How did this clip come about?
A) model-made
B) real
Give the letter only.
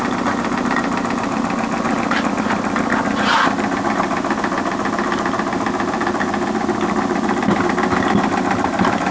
B